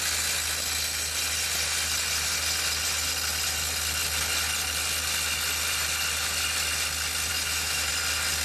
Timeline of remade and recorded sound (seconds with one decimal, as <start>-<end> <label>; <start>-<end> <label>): 0.0-7.3 recorded; 7.3-7.9 remade; 7.9-8.4 recorded